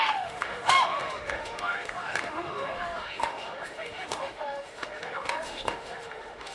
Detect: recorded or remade remade